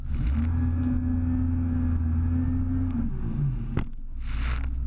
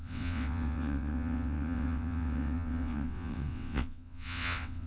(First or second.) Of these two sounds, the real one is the first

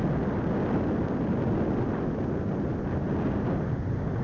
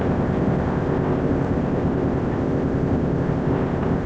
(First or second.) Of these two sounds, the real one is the first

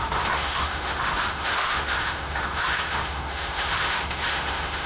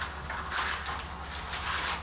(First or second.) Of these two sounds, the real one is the second